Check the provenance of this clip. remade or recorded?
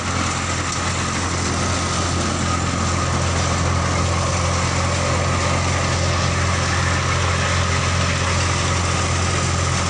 recorded